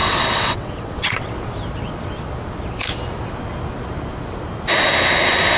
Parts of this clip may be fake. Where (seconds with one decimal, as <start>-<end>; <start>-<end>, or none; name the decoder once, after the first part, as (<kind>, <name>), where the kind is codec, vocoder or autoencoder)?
0.0-1.3 (vocoder, WaveNeXt)

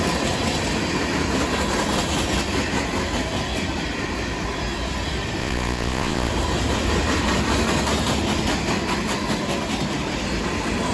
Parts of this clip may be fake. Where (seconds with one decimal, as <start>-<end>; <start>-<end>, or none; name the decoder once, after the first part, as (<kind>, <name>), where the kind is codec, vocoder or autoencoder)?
5.4-6.3 (vocoder, Vocos)

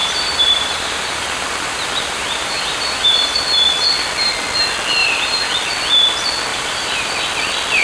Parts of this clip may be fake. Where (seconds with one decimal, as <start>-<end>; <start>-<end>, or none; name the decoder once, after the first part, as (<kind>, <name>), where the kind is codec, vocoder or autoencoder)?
0.0-3.4 (vocoder, BigVGAN v2); 5.0-5.5; 6.5-7.1

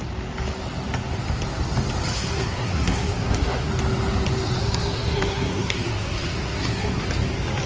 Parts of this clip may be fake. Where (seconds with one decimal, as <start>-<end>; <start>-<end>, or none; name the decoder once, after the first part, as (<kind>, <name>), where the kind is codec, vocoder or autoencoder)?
2.1-3.7 (codec, SNAC); 4.6-7.0